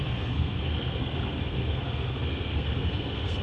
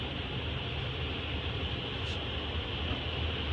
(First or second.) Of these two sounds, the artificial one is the first